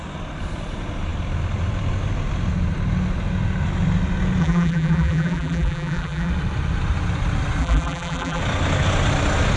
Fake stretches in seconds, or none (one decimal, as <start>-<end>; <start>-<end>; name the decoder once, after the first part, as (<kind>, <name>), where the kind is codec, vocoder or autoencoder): 4.4-6.3 (vocoder, BigVGAN v2); 7.6-8.4